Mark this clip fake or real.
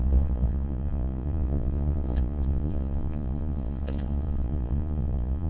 fake